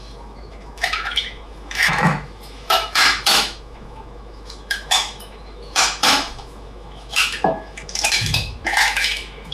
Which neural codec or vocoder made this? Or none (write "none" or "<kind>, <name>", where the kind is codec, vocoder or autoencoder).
autoencoder, DAC-VAE